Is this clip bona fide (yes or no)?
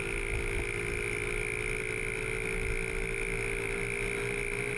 yes